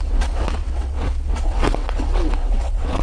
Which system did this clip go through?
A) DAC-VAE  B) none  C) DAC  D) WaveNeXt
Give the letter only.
D